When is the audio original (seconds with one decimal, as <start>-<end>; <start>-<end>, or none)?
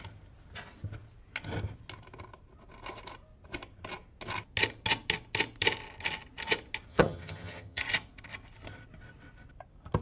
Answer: 0.0-6.9; 7.8-10.0